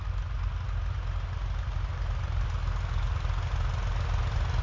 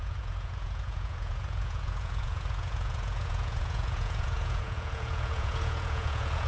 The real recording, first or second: first